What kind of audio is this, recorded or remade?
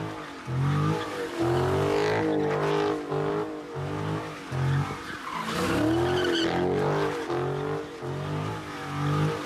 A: recorded